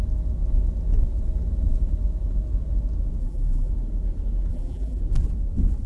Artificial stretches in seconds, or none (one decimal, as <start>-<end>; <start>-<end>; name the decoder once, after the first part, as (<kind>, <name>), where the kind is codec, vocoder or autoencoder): 3.2-3.7 (vocoder, BigVGAN v2); 4.5-5.0